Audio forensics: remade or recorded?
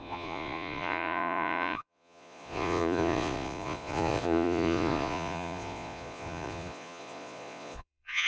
remade